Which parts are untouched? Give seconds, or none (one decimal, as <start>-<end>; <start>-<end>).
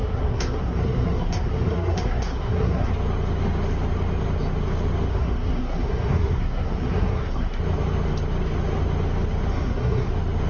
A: 2.9-5.1; 7.6-9.5; 10.1-10.5